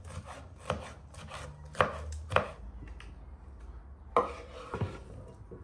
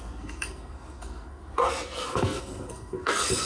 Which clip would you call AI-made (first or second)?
second